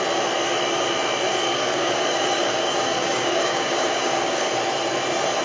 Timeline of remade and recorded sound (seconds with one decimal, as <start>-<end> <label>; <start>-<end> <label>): 0.0-1.3 recorded; 1.3-4.5 remade; 4.5-5.4 recorded